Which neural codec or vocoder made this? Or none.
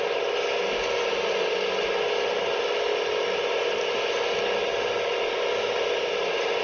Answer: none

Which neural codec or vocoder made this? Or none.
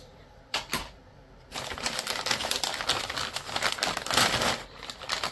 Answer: vocoder, BigVGAN v2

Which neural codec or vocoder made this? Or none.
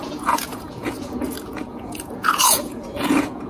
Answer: vocoder, Vocos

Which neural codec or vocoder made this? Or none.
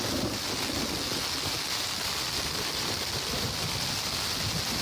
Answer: none